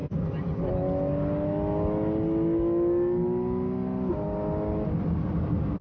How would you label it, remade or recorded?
recorded